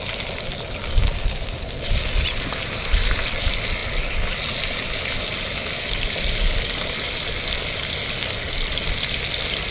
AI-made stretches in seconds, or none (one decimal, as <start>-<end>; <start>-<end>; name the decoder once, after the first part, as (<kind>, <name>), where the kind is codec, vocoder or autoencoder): none